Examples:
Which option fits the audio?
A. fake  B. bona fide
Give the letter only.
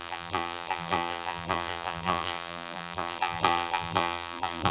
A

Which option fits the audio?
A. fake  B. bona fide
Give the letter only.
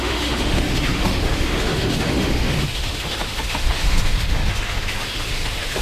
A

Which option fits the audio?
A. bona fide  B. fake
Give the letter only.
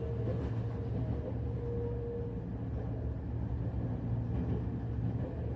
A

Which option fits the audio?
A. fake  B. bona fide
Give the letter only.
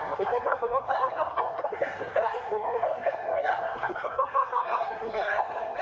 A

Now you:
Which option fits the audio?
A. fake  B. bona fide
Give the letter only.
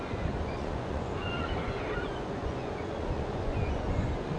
A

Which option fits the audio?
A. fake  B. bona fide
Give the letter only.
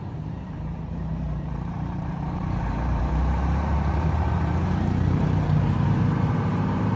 A